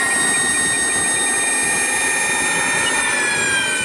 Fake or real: real